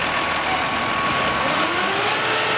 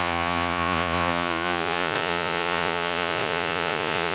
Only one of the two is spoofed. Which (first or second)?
second